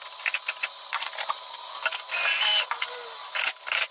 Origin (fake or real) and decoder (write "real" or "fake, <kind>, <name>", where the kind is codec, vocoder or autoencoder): real